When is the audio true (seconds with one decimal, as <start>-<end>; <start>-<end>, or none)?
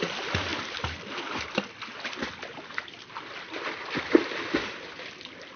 0.0-5.6